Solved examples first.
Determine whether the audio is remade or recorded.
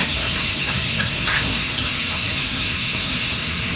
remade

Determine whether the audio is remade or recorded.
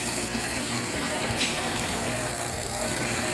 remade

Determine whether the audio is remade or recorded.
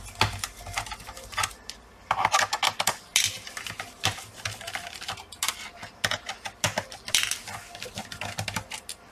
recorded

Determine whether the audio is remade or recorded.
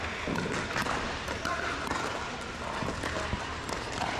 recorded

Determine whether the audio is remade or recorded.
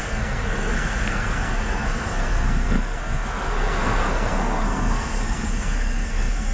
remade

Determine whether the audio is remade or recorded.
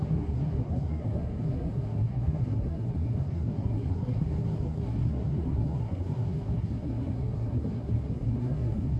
remade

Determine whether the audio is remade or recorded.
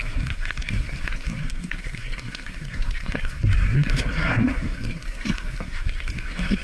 remade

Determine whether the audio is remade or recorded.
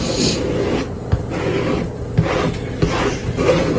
recorded